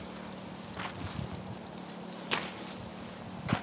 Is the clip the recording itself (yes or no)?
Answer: yes